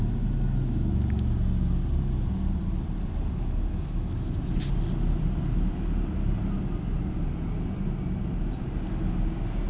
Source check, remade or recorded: recorded